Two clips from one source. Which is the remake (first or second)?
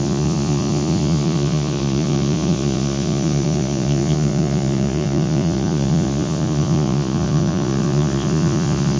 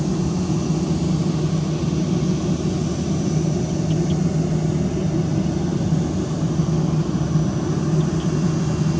first